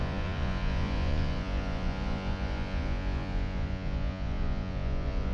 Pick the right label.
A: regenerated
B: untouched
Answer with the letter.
A